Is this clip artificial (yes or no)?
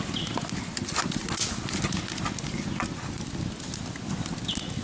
no